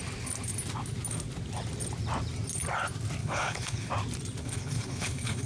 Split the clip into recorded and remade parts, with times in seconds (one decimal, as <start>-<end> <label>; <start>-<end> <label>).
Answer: 0.0-3.2 recorded; 3.2-3.9 remade; 3.9-4.4 recorded; 4.4-5.5 remade